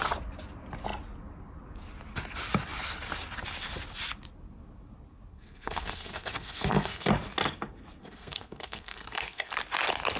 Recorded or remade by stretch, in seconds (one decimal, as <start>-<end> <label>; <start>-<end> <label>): 0.0-5.3 recorded; 5.3-7.1 remade; 7.1-8.0 recorded; 8.0-9.5 remade; 9.5-10.2 recorded